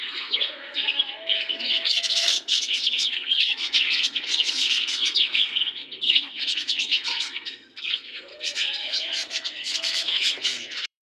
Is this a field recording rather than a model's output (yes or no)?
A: no